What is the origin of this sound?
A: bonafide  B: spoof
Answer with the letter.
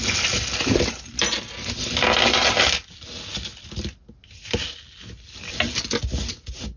A